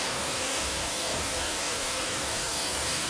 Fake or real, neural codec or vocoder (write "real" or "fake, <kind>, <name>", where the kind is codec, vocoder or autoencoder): fake, codec, DAC